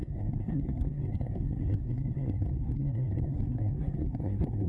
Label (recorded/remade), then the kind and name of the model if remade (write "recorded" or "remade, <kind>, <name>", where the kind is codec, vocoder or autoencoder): remade, codec, SNAC